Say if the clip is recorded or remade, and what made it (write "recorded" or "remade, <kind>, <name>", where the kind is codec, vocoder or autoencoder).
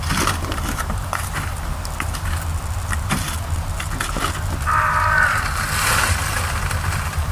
recorded